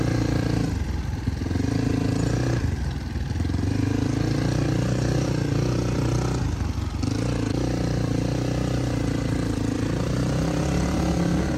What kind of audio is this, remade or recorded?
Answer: recorded